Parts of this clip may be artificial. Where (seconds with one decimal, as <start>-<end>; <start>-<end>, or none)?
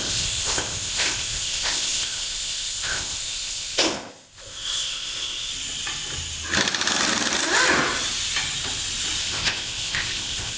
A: 0.0-5.5; 9.2-10.6